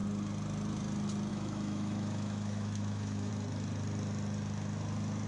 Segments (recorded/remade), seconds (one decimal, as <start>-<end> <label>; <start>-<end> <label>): 0.0-1.3 recorded; 1.3-3.3 remade; 3.3-5.3 recorded